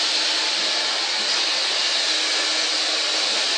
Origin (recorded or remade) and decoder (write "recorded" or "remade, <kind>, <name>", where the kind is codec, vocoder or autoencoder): recorded